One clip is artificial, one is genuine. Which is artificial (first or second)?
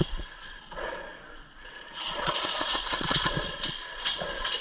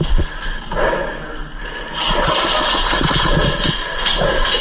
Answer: first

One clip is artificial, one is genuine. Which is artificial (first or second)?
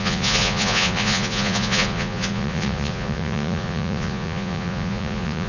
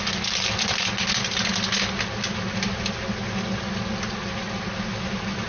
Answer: first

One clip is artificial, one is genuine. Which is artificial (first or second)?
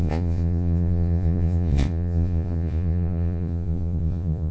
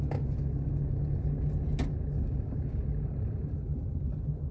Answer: first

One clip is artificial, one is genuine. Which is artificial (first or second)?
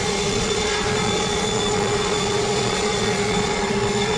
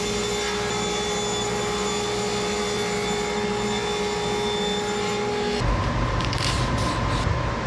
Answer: first